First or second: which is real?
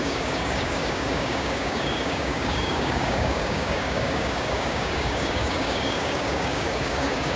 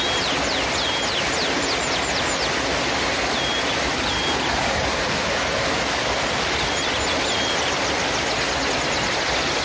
second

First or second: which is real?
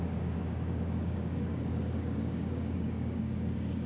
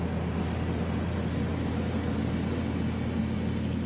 second